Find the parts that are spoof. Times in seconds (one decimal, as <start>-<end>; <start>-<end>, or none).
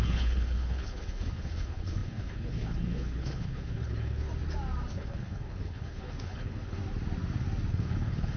0.0-4.3; 4.9-6.8; 7.7-8.4